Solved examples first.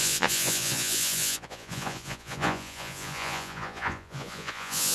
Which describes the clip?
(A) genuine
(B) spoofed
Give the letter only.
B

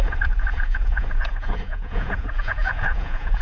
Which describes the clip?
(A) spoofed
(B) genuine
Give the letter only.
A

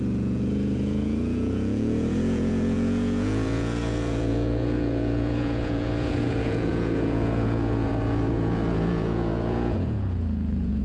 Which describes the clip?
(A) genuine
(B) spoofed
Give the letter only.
B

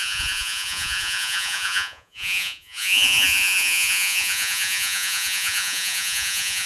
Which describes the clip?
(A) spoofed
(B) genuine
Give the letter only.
A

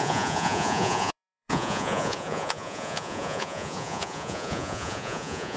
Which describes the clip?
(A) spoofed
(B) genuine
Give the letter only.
A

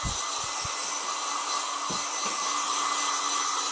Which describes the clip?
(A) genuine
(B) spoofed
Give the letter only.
A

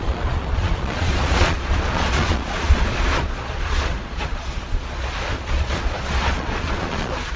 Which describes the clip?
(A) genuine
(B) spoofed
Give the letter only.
B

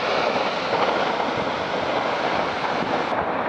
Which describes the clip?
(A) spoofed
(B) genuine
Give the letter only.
B